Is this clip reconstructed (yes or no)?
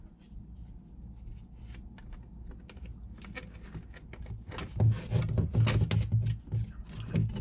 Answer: no